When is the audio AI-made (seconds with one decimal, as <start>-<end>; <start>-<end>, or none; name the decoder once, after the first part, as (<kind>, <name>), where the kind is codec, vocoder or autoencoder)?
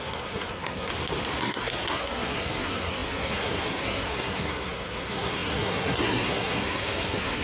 0.0-0.9 (codec, SNAC); 1.4-7.4